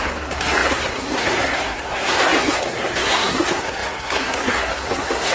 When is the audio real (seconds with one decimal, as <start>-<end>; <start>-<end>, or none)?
none